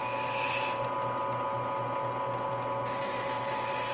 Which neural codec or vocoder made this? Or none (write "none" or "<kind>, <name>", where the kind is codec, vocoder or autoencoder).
none